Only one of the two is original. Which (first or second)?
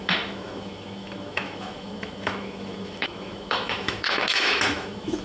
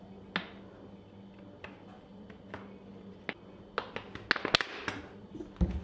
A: second